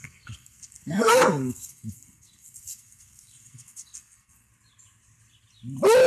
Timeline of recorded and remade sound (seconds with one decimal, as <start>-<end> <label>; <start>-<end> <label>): 0.0-4.5 remade; 4.5-6.1 recorded